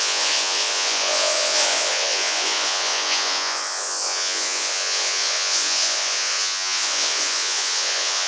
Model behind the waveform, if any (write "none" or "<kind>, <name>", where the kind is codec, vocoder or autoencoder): vocoder, Vocos